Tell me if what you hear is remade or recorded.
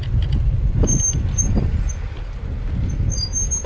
recorded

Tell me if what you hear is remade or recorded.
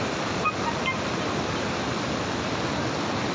recorded